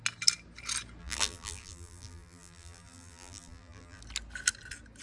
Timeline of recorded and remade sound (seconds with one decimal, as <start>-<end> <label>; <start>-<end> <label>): 0.0-1.0 recorded; 1.0-4.0 remade; 4.0-5.0 recorded